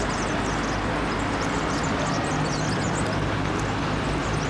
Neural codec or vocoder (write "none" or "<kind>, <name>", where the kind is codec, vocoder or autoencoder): none